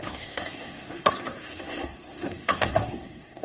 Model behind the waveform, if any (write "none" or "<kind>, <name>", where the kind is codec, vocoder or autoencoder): codec, SNAC